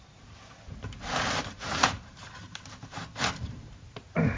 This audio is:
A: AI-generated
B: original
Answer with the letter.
A